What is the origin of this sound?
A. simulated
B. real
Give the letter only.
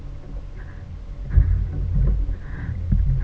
B